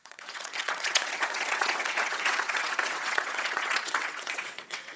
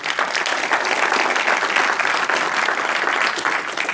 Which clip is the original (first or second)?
second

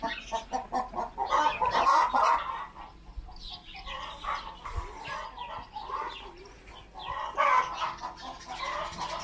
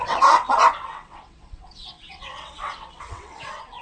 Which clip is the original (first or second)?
first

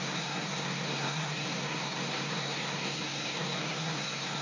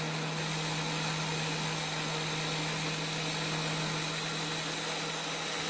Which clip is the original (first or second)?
second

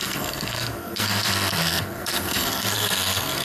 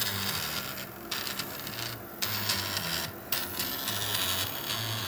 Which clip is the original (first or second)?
second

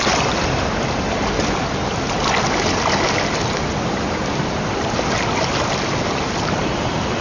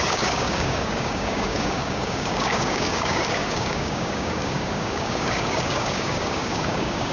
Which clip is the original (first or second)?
first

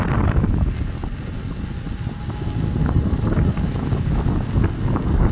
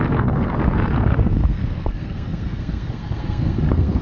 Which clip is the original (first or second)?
first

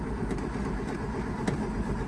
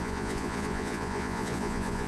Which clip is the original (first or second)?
first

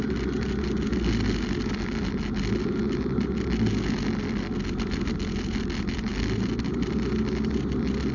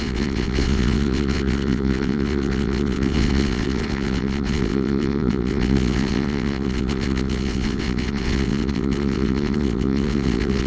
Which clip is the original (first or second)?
first